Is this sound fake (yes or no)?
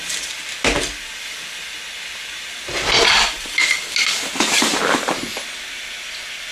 no